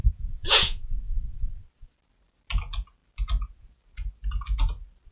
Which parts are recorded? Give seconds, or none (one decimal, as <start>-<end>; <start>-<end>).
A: 1.6-5.1